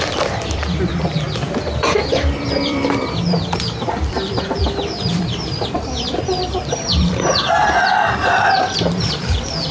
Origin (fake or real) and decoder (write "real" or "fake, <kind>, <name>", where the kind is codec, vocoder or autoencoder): fake, vocoder, BigVGAN v2